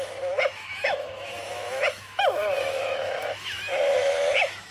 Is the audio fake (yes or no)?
yes